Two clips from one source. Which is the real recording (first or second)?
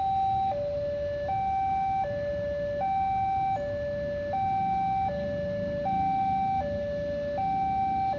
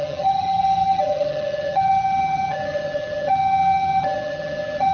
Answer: first